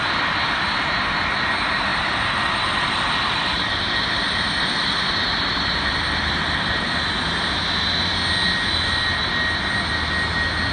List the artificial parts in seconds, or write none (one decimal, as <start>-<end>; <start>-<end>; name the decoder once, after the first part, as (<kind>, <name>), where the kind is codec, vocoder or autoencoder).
1.9-6.8 (vocoder, BigVGAN v2)